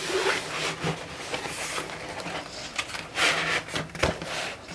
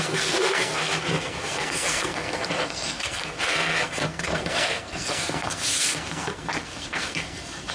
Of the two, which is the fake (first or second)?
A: second